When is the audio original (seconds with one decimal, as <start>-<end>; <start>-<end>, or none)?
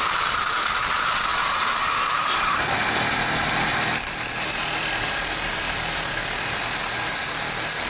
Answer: 0.0-7.9